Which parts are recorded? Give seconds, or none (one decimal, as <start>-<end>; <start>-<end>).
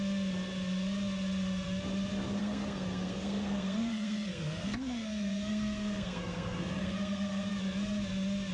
0.0-2.4; 7.5-8.5